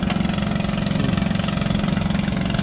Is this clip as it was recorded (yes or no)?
yes